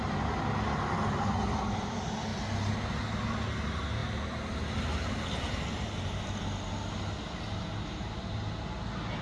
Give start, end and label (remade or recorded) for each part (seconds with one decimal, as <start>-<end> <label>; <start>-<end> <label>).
0.0-9.2 recorded

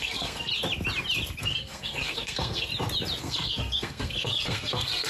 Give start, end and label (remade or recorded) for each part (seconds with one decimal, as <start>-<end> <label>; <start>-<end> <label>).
0.0-0.5 remade; 0.5-1.4 recorded; 1.4-2.7 remade; 2.7-3.2 recorded; 3.2-5.1 remade

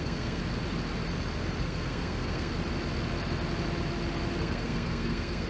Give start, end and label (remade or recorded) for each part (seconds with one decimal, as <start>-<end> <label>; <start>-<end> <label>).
0.0-0.4 remade; 0.4-1.6 recorded; 1.6-2.5 remade; 2.5-4.4 recorded; 4.4-5.5 remade

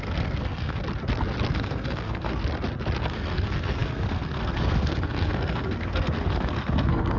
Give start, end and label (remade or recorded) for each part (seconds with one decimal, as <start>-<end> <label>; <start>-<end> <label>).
0.0-0.8 remade; 0.8-1.5 recorded; 1.5-2.4 remade; 2.4-3.0 recorded; 3.0-7.2 remade